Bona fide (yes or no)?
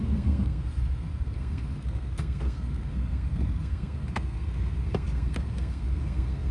no